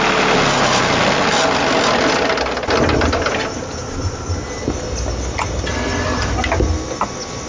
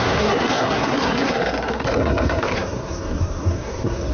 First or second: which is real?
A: first